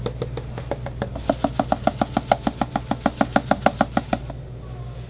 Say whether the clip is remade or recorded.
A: recorded